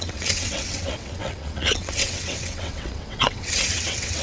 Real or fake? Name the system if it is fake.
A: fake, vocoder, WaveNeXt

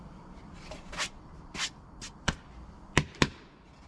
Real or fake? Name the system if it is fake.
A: real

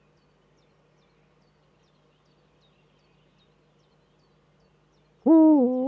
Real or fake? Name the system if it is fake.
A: real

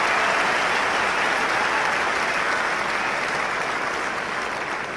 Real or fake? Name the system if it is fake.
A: real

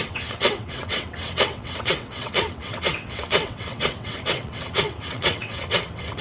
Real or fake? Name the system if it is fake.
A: fake, vocoder, WaveNeXt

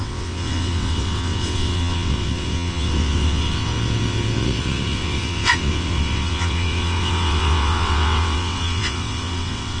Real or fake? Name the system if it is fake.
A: fake, vocoder, WaveNeXt